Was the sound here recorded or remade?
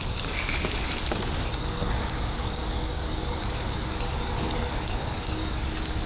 remade